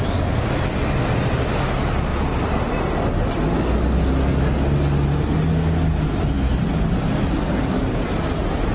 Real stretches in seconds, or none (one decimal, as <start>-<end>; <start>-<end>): 0.0-8.7